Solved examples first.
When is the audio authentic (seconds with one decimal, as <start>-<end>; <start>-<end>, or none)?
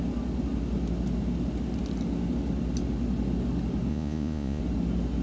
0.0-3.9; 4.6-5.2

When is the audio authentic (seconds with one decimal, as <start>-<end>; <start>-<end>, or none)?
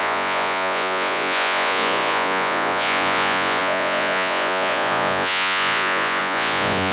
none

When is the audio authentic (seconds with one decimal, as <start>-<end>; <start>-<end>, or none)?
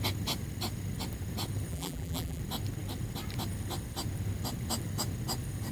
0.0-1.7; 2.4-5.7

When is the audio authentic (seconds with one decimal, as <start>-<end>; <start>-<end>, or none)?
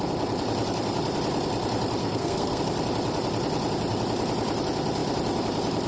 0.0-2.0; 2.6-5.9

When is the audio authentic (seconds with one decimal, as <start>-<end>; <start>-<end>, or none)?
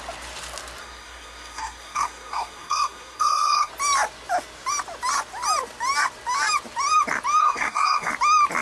0.0-0.8; 3.7-7.4; 8.1-8.6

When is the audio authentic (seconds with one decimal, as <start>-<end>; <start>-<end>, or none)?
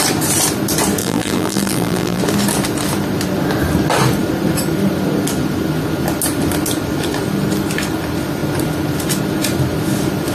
0.0-1.0; 2.2-10.3